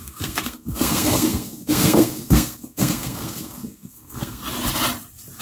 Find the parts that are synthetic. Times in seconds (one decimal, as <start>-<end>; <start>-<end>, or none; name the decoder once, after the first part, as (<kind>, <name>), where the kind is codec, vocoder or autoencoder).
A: 0.0-4.4 (codec, SNAC)

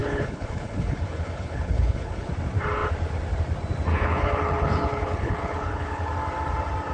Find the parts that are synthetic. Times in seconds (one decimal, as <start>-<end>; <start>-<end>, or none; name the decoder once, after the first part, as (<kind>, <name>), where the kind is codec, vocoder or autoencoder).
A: 0.0-2.3 (codec, HILCodec); 3.9-6.1